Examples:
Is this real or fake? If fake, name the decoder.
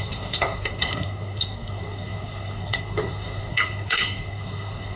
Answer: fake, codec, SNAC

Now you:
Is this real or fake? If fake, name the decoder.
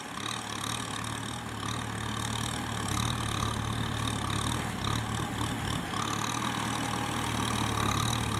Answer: real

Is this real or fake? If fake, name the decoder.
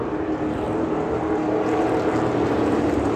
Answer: real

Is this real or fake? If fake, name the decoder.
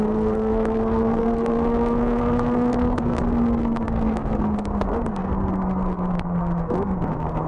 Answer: fake, codec, SNAC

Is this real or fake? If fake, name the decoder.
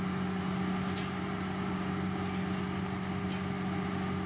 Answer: real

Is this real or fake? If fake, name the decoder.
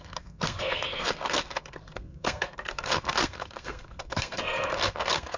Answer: fake, codec, SNAC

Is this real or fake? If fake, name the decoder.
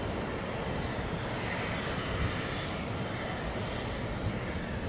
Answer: real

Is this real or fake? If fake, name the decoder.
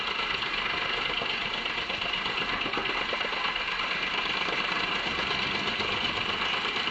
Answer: real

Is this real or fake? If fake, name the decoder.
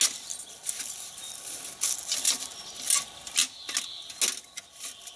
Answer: real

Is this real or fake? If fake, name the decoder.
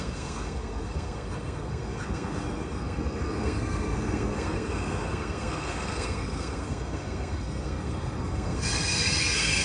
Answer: fake, codec, SNAC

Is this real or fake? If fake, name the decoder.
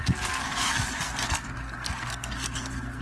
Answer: fake, codec, SNAC